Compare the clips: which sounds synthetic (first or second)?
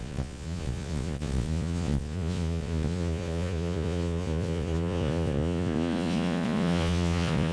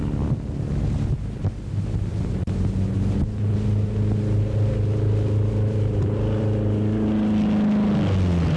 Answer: first